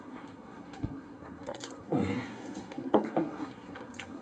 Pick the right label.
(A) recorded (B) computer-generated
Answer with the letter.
B